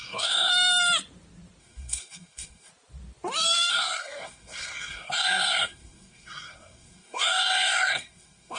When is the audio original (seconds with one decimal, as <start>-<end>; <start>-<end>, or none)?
0.5-1.6; 2.7-3.7